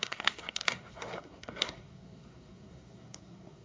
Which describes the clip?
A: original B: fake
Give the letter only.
B